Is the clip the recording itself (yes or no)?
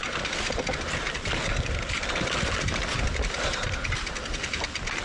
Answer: yes